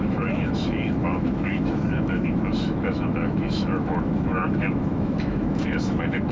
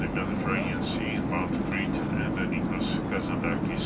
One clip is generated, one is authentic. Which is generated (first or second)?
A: first